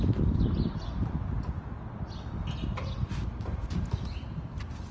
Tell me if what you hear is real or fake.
real